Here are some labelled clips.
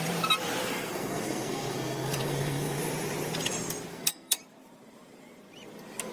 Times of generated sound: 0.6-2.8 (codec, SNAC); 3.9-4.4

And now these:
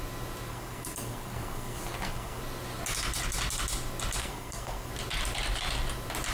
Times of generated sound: 0.5-2.4 (codec, SNAC); 4.2-4.9

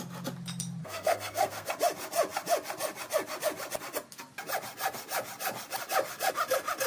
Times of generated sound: 0.8-1.7 (codec, SNAC)

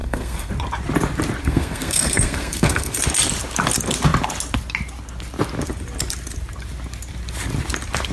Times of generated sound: 0.0-0.5 (codec, SNAC); 1.4-3.0

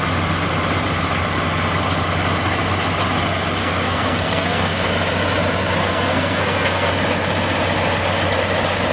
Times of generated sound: 3.6-4.9 (codec, SNAC); 5.8-6.9

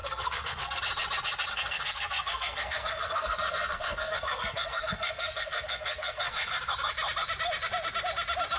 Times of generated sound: 0.0-0.8 (codec, SNAC); 1.5-6.5

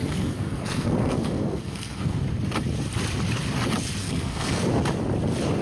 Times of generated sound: 0.0-2.2 (codec, SNAC); 4.0-4.7

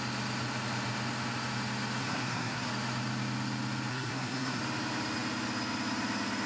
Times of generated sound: 2.0-2.7 (codec, SNAC); 3.9-4.6